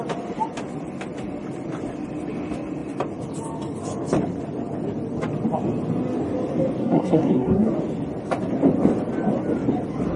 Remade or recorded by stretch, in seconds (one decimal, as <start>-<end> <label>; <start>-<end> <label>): 0.0-6.8 recorded; 6.8-7.7 remade; 7.7-10.2 recorded